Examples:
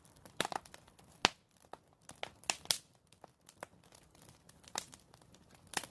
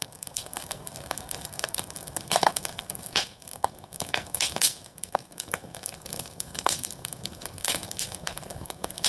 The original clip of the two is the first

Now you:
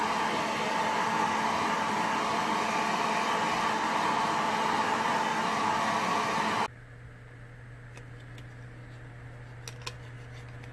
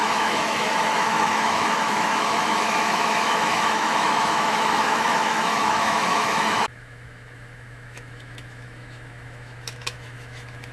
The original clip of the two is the first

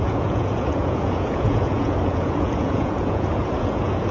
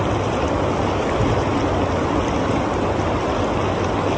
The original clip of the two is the second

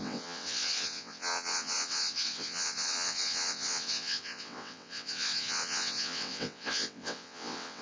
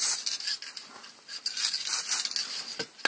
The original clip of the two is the second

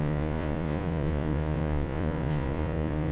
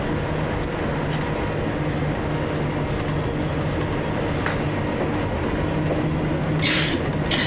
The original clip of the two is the second